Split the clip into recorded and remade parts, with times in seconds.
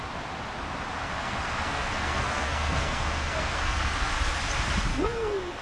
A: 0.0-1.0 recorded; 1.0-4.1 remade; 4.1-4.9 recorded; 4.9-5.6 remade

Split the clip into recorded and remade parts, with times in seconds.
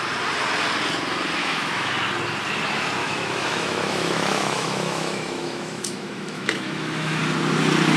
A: 0.0-1.4 recorded; 1.4-1.9 remade; 1.9-3.0 recorded; 3.0-7.2 remade; 7.2-8.0 recorded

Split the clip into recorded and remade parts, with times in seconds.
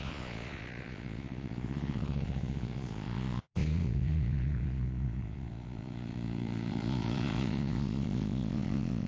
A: 0.0-9.1 remade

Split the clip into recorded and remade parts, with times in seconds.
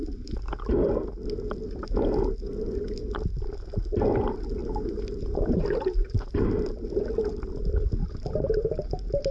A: 0.0-4.6 recorded; 4.6-6.6 remade; 6.6-8.0 recorded; 8.0-9.3 remade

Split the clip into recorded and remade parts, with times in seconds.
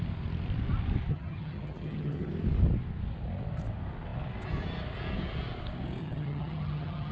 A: 0.0-1.1 recorded; 1.1-2.3 remade; 2.3-6.0 recorded; 6.0-7.1 remade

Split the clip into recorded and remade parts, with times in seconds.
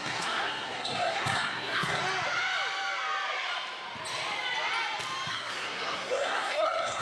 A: 0.0-2.0 remade; 2.0-5.3 recorded; 5.3-7.0 remade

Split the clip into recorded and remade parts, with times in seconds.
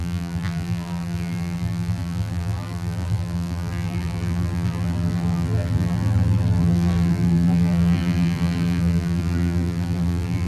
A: 0.0-10.5 remade